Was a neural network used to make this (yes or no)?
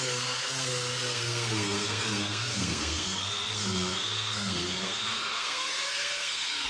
yes